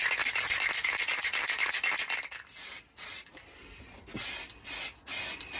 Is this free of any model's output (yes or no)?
yes